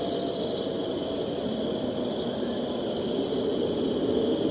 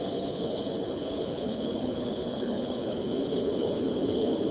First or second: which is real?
first